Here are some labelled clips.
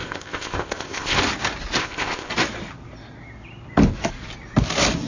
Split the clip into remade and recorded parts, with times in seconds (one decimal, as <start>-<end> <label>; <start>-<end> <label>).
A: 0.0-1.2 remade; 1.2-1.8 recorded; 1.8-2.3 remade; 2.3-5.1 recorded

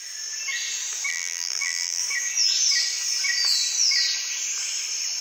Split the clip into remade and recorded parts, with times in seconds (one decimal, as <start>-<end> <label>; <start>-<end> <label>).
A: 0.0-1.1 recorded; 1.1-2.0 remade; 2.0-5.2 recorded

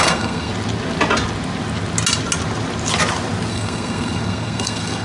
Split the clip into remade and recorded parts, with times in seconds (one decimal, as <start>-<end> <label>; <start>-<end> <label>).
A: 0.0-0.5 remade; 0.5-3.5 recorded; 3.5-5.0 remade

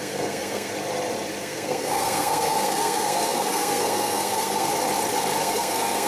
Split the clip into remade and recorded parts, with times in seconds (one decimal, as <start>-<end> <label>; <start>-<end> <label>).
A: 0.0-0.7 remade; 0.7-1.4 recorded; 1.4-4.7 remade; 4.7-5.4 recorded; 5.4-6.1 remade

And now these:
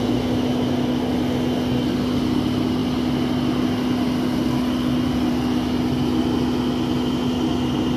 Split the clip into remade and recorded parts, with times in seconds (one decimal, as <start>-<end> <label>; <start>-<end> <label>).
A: 0.0-8.0 recorded

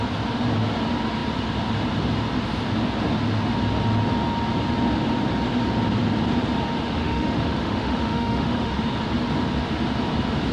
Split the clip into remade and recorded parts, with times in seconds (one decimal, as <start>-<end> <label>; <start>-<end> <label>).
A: 0.0-7.0 recorded; 7.0-8.7 remade; 8.7-10.5 recorded

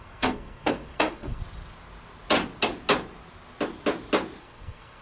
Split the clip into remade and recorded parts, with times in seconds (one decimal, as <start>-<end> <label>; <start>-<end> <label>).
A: 0.0-1.4 remade; 1.4-4.4 recorded; 4.4-5.0 remade